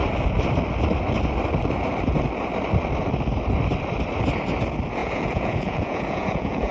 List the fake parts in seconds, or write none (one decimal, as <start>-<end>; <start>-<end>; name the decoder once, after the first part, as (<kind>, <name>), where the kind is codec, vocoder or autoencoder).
5.0-6.7 (vocoder, Vocos)